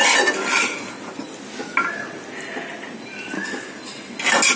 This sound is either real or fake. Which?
real